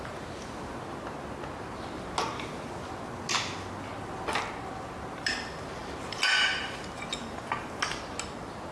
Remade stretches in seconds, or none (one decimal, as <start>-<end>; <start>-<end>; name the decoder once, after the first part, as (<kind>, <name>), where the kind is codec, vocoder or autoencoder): none